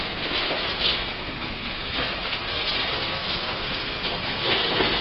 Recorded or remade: remade